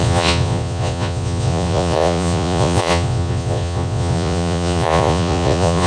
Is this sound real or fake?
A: fake